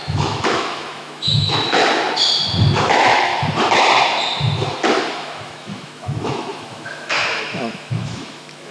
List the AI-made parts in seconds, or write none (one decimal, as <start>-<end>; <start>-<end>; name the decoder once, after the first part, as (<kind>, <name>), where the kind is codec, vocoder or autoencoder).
0.0-1.8 (autoencoder, DAC-VAE); 2.8-3.3; 5.1-8.7